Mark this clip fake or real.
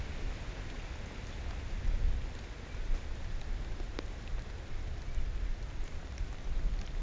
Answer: real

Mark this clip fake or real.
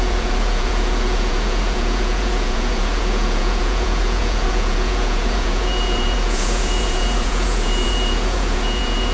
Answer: fake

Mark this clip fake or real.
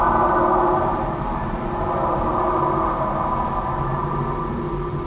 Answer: fake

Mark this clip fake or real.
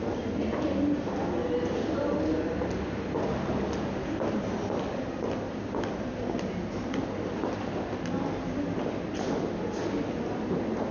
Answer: real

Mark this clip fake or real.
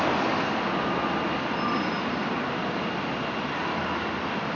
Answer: real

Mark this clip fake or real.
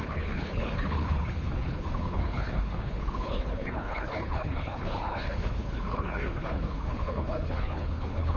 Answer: fake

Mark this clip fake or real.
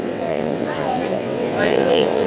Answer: fake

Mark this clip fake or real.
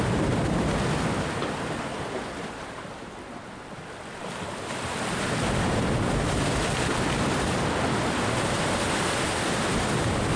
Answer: real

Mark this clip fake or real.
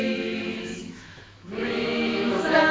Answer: fake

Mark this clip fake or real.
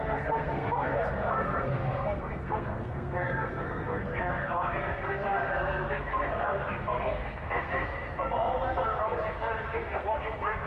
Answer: fake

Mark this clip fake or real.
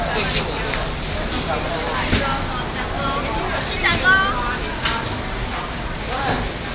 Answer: real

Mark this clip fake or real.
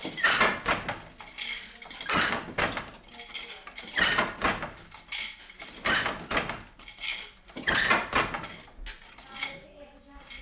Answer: real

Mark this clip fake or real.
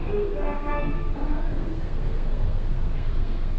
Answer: fake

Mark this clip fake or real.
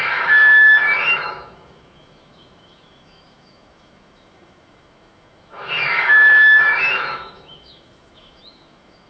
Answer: fake